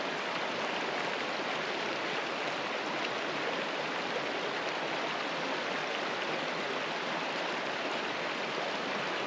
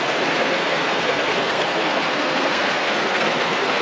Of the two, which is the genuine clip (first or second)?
first